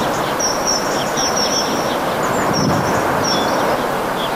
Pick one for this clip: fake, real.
real